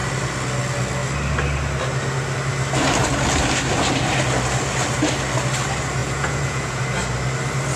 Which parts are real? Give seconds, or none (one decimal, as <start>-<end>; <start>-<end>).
0.0-6.0; 6.8-7.8